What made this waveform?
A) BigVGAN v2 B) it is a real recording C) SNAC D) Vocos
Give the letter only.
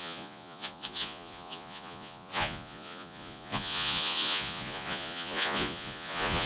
D